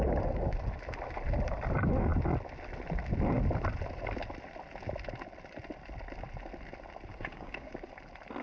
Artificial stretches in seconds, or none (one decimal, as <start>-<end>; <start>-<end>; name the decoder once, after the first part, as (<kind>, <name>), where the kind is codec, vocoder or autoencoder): 7.1-7.7 (codec, DAC)